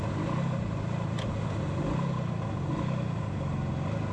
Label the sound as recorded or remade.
recorded